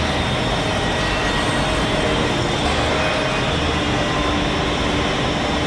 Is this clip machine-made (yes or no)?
no